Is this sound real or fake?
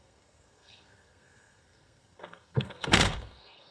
fake